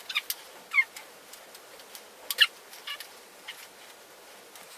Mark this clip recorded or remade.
recorded